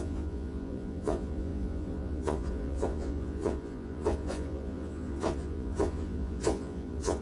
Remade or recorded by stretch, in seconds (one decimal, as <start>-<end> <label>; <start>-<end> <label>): 0.0-7.2 remade